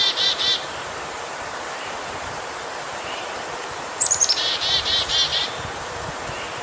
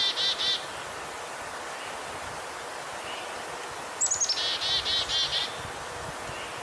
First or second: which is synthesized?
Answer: first